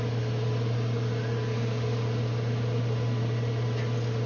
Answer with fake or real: real